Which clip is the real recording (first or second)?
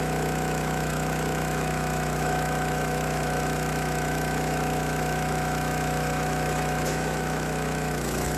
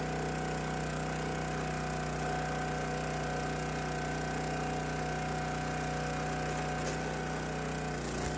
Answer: second